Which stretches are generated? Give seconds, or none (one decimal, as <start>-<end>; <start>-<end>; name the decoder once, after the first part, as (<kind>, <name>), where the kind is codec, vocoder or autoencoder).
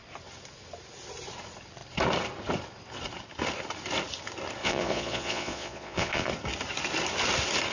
4.6-6.3 (vocoder, Vocos)